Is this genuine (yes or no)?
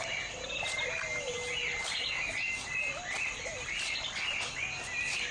yes